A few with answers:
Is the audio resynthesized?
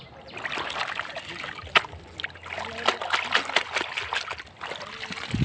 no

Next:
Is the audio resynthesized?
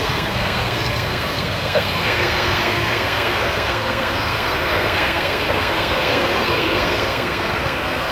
yes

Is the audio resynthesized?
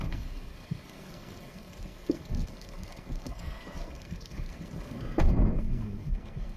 yes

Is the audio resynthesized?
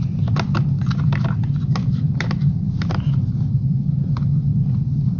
no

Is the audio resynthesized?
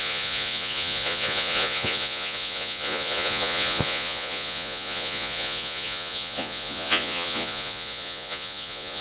yes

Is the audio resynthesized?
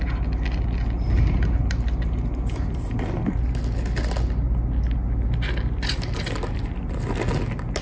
no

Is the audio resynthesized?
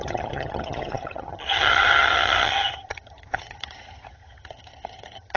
yes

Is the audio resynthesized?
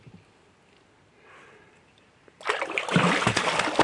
no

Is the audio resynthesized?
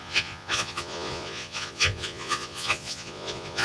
yes